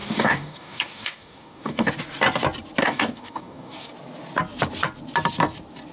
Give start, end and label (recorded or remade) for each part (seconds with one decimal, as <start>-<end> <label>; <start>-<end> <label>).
0.0-1.9 remade; 1.9-2.8 recorded; 2.8-3.9 remade; 3.9-5.9 recorded